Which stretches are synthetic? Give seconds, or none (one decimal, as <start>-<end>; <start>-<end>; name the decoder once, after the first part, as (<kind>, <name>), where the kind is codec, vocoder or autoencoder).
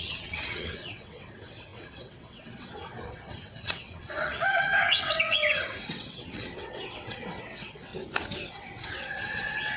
0.0-7.9 (vocoder, WaveNeXt); 8.5-9.8